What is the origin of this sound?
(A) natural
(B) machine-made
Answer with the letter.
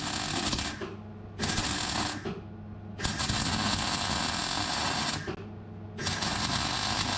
A